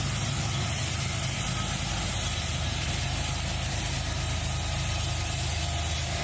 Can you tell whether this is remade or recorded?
recorded